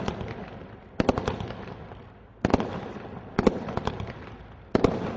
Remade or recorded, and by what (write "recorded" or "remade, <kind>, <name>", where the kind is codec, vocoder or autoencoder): recorded